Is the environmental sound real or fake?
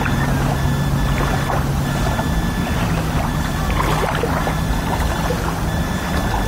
real